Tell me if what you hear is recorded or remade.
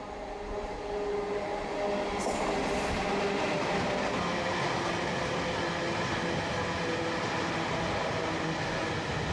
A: recorded